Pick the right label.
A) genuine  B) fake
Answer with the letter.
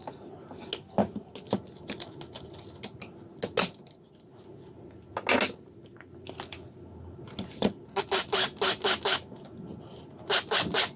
A